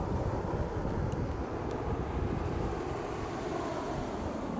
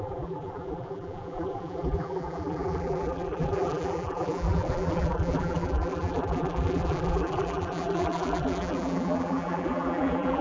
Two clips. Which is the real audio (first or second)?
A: first